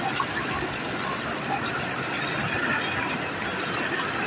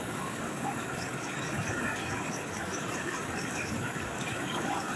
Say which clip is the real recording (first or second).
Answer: first